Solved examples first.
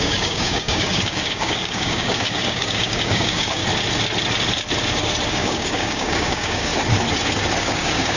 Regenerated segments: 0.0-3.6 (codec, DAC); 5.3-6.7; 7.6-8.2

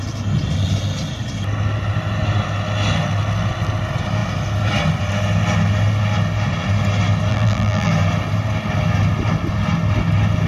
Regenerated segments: 7.3-7.9 (vocoder, BigVGAN v2)

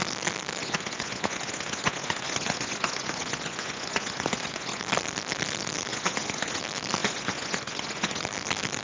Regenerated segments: 0.6-4.8 (vocoder, Vocos); 5.9-6.6; 7.0-8.2

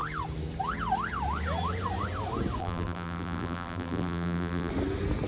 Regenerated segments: 2.6-4.7 (vocoder, BigVGAN v2)

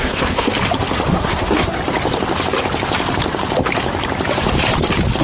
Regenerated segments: 0.0-0.5 (codec, SNAC); 1.1-1.8

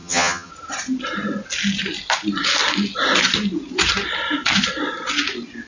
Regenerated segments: 0.0-0.5 (vocoder, HiFi-GAN)

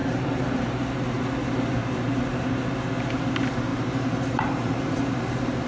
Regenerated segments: 0.0-1.2 (vocoder, BigVGAN v2); 1.8-2.6; 3.7-5.7

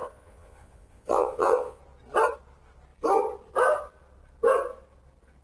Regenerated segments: 0.0-1.8 (vocoder, Vocos)